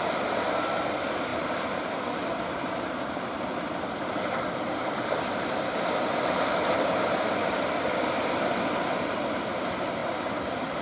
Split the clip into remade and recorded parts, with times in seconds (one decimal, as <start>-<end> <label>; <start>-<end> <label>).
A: 0.0-10.8 recorded